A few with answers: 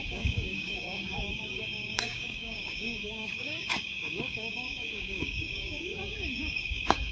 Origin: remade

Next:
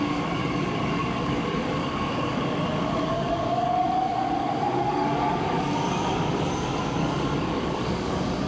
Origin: remade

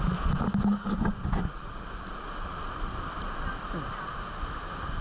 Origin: recorded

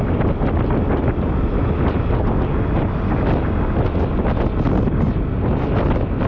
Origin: recorded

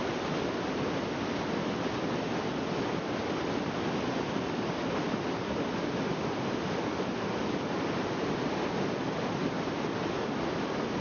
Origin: recorded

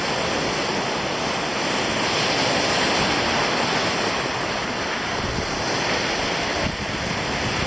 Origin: recorded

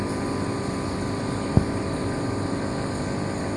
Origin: recorded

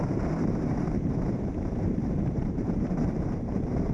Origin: remade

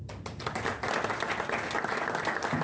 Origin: recorded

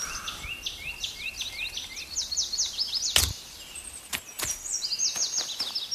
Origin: recorded